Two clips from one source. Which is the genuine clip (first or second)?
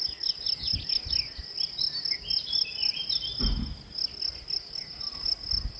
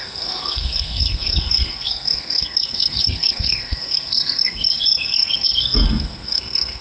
first